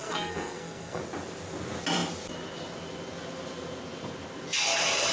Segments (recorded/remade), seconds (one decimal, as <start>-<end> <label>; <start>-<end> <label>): 0.0-1.0 remade; 1.0-5.1 recorded